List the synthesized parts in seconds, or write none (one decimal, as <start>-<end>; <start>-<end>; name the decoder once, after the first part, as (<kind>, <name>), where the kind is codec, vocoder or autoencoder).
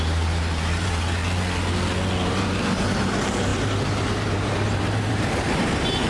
0.0-1.2 (vocoder, BigVGAN v2); 2.3-6.1